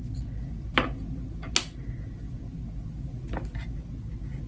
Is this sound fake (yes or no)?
no